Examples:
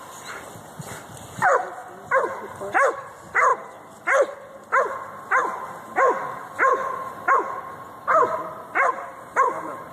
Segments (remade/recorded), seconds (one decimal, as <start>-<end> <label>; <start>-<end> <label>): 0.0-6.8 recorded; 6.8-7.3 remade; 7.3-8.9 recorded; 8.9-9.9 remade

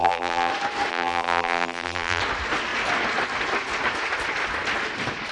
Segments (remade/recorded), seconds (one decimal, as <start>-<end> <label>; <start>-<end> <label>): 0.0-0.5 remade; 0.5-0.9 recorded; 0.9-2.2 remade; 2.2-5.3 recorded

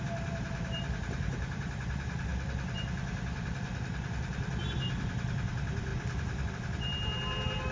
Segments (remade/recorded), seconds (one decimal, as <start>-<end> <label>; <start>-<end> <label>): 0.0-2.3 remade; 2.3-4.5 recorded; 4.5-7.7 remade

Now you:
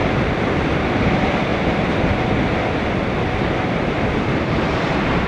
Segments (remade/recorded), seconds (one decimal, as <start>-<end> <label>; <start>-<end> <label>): 0.0-1.0 recorded; 1.0-1.5 remade; 1.5-4.7 recorded; 4.7-5.3 remade

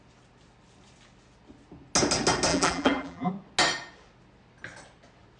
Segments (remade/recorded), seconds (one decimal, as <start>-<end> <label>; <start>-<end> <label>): 0.0-2.5 recorded; 2.5-3.3 remade; 3.3-5.4 recorded

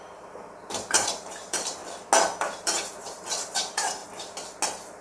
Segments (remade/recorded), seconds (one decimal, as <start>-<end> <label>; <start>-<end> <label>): 0.0-1.8 remade; 1.8-2.6 recorded; 2.6-4.0 remade; 4.0-5.0 recorded

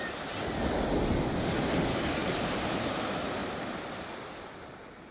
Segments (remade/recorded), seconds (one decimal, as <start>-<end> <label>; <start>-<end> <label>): 0.0-2.2 recorded; 2.2-3.0 remade; 3.0-5.1 recorded